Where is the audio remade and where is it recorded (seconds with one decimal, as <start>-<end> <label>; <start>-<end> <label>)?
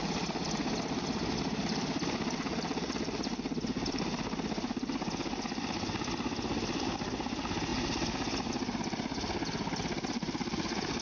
0.0-11.0 recorded